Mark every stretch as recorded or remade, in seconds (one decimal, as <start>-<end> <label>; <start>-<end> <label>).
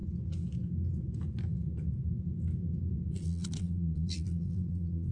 0.0-3.1 recorded; 3.1-5.1 remade